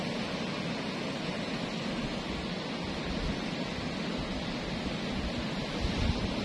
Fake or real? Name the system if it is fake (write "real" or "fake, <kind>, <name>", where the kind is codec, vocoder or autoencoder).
real